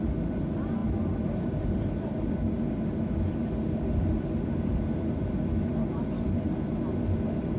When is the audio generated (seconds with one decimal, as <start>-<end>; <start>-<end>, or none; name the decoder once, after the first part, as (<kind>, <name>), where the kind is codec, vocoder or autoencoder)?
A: 0.8-2.3 (vocoder, BigVGAN v2)